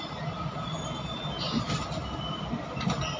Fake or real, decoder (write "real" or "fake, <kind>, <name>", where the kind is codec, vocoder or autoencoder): real